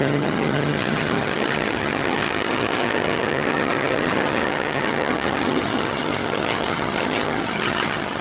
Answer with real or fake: fake